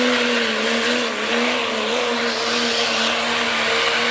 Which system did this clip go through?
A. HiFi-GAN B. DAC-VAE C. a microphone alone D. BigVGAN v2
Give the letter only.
C